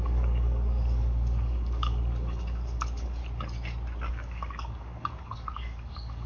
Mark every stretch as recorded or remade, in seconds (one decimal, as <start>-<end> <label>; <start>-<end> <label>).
0.0-3.2 remade; 3.2-4.1 recorded; 4.1-6.3 remade